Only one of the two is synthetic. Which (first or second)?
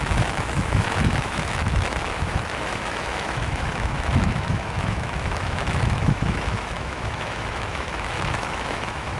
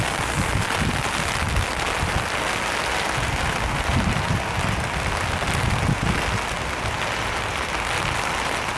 first